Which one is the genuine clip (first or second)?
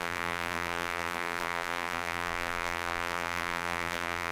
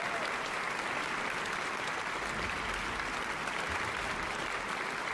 second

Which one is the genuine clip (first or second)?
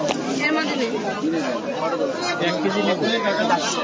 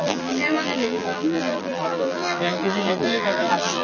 first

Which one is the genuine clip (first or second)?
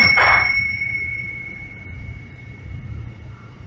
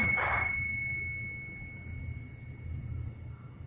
second